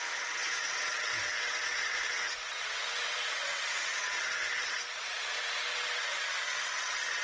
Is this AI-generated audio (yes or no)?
yes